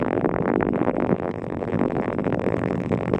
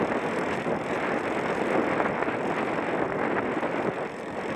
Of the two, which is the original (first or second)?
second